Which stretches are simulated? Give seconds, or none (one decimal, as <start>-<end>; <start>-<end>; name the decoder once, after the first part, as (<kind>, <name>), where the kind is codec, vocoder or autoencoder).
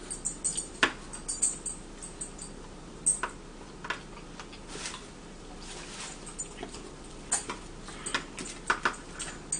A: none